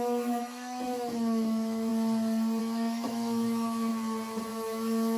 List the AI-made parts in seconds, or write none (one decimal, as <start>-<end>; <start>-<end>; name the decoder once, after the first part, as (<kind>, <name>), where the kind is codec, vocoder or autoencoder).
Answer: 0.0-1.9 (autoencoder, DAC-VAE); 2.6-3.9; 4.5-5.2